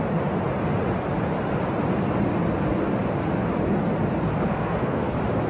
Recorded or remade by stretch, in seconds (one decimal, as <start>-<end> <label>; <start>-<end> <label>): 0.0-4.5 recorded; 4.5-5.1 remade; 5.1-5.5 recorded